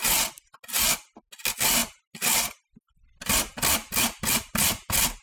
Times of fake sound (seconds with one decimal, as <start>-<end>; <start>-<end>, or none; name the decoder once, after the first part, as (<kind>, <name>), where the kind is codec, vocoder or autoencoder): none